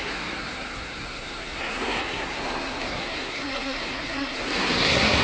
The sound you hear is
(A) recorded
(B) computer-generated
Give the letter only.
B